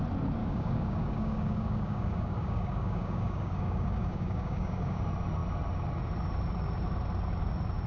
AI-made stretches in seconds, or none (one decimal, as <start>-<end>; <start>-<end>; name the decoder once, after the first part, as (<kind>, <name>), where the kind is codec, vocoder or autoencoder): 0.4-5.0 (codec, DAC)